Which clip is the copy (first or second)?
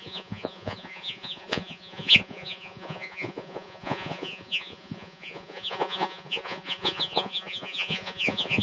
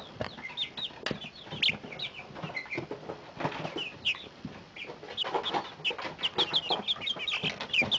first